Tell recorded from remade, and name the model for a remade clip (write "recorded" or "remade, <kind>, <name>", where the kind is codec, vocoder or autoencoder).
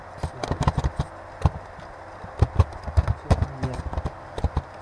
recorded